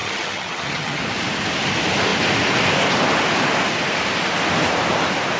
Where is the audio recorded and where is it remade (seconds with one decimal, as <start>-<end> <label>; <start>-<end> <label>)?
0.0-1.0 remade; 1.0-5.4 recorded